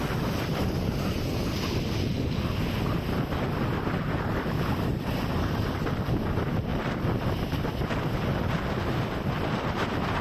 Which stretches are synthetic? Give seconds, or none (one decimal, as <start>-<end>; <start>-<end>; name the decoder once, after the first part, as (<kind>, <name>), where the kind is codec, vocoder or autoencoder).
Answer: none